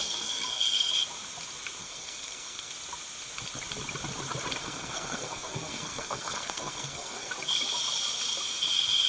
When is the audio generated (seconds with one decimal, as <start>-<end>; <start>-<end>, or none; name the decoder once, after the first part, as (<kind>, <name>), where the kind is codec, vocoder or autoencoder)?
0.0-0.9 (codec, SNAC); 1.8-2.7; 4.6-7.3